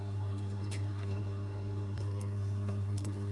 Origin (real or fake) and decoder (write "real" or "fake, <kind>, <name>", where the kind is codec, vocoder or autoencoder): fake, codec, SNAC